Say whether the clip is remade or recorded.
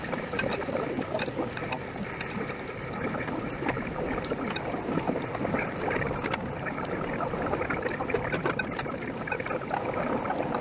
recorded